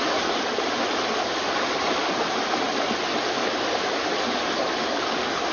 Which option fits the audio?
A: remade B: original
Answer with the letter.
B